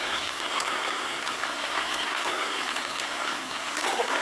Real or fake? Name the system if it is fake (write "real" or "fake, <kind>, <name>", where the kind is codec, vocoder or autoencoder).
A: fake, codec, SNAC